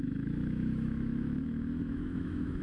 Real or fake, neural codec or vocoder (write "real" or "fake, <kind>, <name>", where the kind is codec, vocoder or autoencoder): fake, autoencoder, DAC-VAE